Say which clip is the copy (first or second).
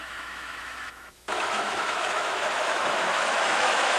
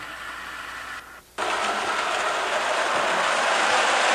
first